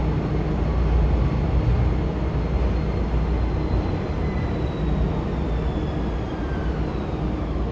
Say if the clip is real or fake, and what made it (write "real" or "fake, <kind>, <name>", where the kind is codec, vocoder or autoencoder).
real